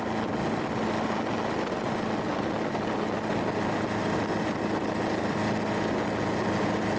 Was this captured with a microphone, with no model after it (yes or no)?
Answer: yes